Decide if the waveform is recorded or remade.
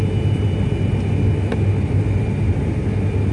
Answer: recorded